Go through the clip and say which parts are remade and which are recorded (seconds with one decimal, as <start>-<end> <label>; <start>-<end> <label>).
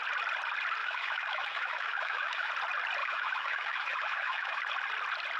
0.0-0.8 recorded; 0.8-2.5 remade; 2.5-3.0 recorded; 3.0-4.6 remade; 4.6-5.4 recorded